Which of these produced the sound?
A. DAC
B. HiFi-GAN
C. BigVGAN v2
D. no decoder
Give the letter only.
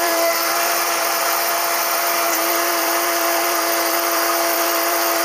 C